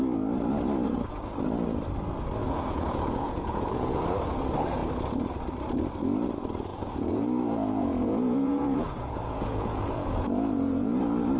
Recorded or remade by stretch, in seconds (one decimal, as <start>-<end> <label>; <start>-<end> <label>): 0.0-2.4 recorded; 2.4-4.0 remade; 4.0-6.7 recorded; 6.7-11.0 remade; 11.0-11.4 recorded